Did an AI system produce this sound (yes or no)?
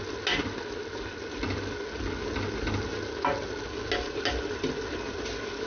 no